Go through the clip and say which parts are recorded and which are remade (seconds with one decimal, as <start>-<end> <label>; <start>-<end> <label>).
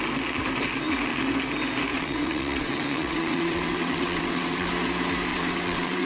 0.0-1.9 recorded; 1.9-4.7 remade; 4.7-5.3 recorded; 5.3-6.1 remade